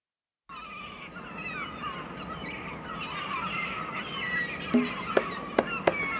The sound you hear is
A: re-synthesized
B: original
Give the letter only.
B